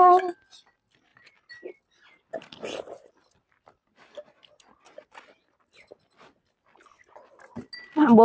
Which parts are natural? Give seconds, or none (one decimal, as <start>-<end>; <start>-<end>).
0.0-8.2